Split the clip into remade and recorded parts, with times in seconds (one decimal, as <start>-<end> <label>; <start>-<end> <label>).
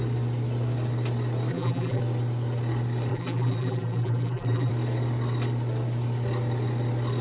0.0-1.5 recorded; 1.5-2.0 remade; 2.0-3.1 recorded; 3.1-4.7 remade; 4.7-7.2 recorded